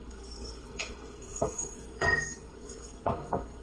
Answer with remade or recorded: remade